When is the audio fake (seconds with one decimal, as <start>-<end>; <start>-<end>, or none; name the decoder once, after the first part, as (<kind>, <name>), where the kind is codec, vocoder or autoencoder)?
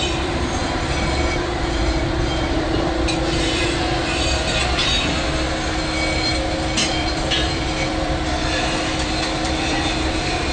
0.0-4.8 (vocoder, BigVGAN v2); 6.9-10.5